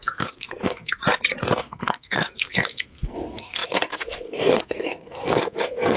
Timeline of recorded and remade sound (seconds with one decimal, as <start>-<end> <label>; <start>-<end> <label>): 0.0-1.0 remade; 1.0-1.6 recorded; 1.6-6.0 remade